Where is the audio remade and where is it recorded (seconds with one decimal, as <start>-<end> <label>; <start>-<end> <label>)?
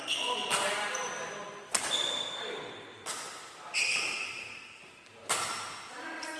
0.0-6.4 recorded